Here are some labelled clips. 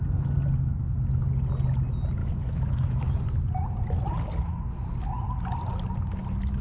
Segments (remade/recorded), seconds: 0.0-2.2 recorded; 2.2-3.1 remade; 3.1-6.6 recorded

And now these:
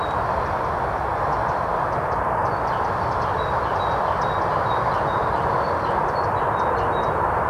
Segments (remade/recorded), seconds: 0.0-1.1 recorded; 1.1-1.7 remade; 1.7-7.5 recorded

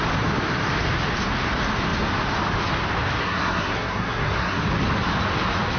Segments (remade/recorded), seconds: 0.0-3.2 recorded; 3.2-4.6 remade; 4.6-5.8 recorded